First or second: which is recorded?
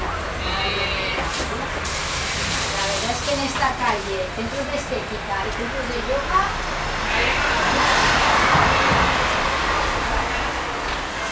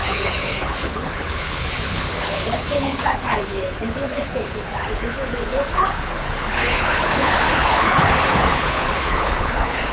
first